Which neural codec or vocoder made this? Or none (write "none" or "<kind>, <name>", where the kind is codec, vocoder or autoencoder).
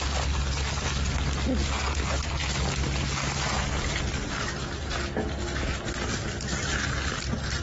none